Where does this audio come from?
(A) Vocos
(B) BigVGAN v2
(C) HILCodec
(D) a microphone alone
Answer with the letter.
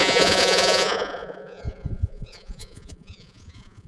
A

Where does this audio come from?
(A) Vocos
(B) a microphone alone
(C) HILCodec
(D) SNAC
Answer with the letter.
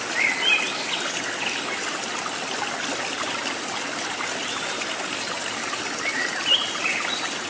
B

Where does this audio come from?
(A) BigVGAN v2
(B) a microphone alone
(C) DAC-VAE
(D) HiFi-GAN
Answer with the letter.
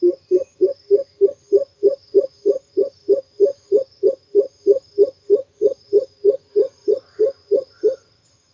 D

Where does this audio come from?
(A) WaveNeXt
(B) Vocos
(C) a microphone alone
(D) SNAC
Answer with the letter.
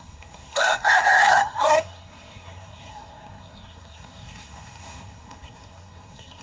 D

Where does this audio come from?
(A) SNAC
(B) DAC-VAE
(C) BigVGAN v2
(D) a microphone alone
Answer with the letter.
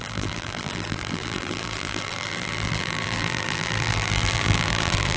C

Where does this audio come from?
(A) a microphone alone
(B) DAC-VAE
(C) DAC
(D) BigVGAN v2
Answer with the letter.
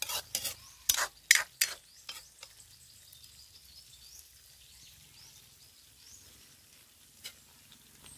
A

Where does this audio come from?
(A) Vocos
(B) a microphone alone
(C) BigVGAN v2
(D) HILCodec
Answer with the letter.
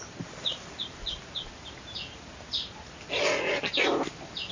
B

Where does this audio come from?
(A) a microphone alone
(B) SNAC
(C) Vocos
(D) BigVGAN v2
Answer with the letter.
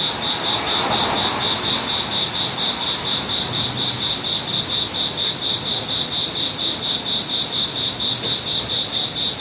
A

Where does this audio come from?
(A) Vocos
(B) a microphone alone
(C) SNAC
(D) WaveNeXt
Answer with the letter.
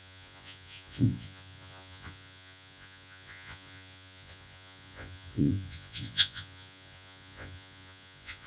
A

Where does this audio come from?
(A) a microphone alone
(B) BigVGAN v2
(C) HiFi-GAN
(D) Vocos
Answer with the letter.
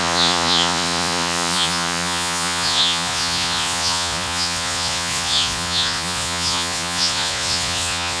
D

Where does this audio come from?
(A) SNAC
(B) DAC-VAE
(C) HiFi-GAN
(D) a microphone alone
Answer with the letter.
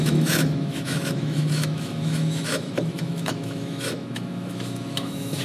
B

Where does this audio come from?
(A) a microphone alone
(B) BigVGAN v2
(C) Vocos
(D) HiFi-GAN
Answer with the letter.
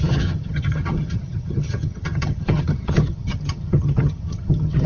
D